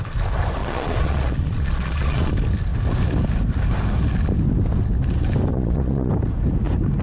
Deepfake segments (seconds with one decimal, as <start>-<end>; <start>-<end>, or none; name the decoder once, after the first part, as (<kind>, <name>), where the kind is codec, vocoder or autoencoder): 0.6-2.3 (vocoder, Vocos); 5.5-6.1